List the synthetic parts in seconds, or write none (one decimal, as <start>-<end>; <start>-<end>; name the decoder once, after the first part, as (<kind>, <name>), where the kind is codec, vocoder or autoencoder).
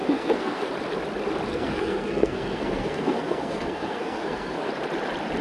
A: 0.0-0.7 (codec, SNAC); 1.5-4.7